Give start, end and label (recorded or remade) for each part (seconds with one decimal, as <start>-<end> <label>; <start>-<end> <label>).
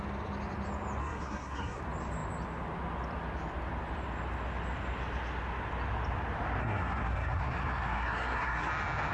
0.0-1.0 recorded; 1.0-1.8 remade; 1.8-6.6 recorded; 6.6-8.7 remade; 8.7-9.1 recorded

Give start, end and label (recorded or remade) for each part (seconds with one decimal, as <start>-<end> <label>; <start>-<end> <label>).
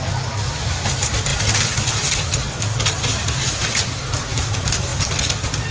0.0-5.7 recorded